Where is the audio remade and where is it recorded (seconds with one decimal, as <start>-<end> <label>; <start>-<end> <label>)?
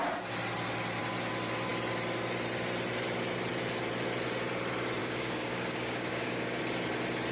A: 0.0-5.0 recorded; 5.0-6.6 remade; 6.6-7.3 recorded